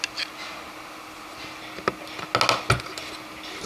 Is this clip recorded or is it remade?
recorded